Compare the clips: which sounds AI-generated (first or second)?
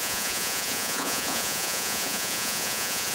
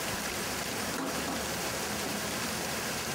first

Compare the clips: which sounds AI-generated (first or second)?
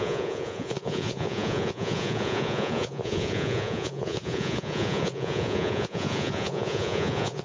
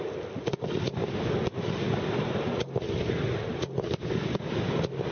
first